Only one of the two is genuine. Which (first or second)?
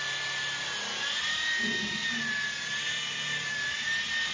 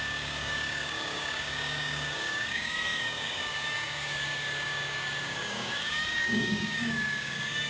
first